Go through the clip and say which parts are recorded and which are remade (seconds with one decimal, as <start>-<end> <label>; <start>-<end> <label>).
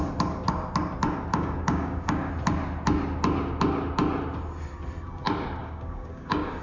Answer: 0.0-1.3 recorded; 1.3-2.3 remade; 2.3-5.6 recorded; 5.6-6.6 remade